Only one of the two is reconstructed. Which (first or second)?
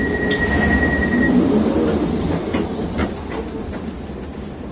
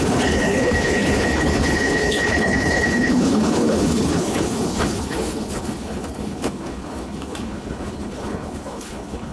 second